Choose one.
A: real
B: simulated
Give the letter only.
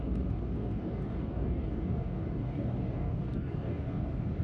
B